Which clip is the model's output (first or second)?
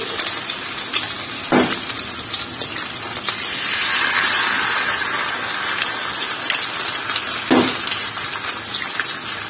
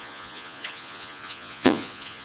second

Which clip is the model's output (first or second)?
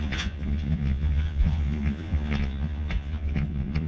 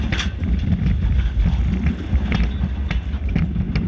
first